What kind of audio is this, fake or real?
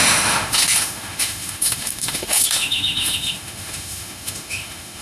fake